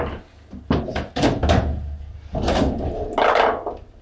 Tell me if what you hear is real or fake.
real